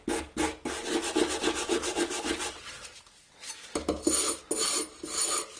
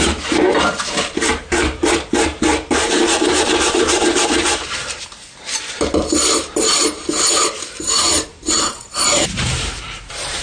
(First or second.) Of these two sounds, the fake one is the second